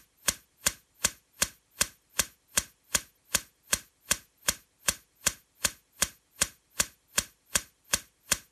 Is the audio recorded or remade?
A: remade